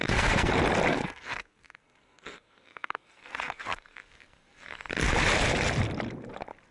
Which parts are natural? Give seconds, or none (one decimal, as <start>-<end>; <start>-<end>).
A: 0.5-0.9; 4.9-6.7